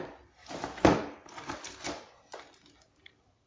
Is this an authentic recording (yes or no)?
yes